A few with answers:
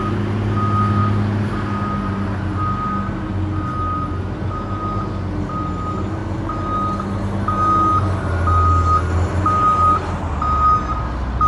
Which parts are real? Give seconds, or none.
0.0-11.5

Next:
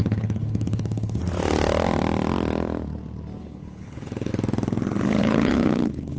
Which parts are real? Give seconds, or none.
1.2-3.4; 4.3-5.2

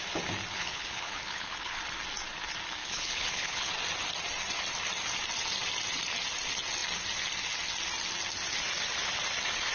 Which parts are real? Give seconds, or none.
0.0-0.5; 1.8-2.8; 3.7-9.7

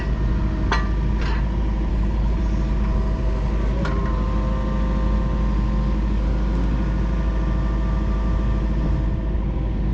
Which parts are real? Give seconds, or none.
0.0-1.9; 2.4-9.9

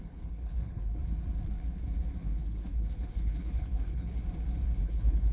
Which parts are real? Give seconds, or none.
1.0-2.2; 4.2-4.8

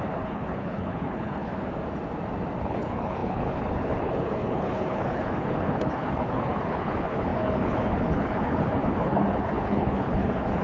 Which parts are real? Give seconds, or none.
1.5-2.6